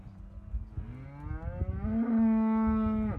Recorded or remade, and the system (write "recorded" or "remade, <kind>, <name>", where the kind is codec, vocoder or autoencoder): recorded